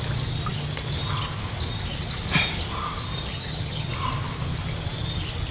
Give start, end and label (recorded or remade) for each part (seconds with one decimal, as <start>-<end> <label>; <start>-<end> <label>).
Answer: 0.0-3.3 recorded; 3.3-3.9 remade; 3.9-5.5 recorded